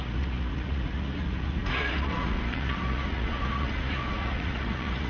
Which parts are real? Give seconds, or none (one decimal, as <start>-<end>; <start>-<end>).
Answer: none